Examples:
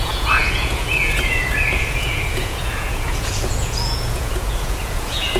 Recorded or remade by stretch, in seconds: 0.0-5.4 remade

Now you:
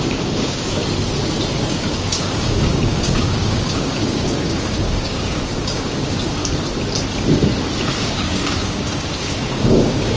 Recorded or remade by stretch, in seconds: 0.0-0.8 remade; 0.8-1.7 recorded; 1.7-6.4 remade; 6.4-8.0 recorded; 8.0-10.2 remade